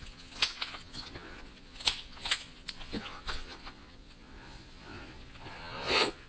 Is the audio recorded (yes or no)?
no